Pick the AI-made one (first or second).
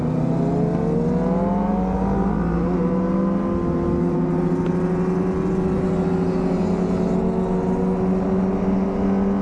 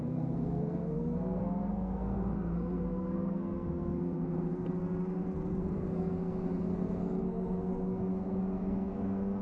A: second